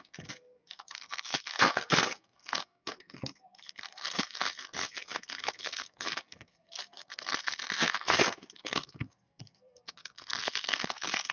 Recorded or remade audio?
remade